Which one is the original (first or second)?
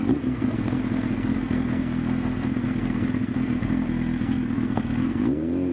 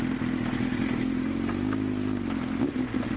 second